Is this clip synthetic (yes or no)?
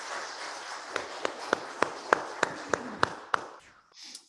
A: no